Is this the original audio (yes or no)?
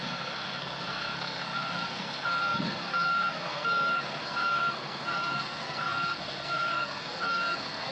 no